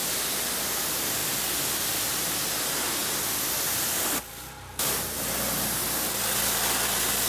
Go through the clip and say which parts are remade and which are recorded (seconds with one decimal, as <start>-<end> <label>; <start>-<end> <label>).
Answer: 0.0-7.3 recorded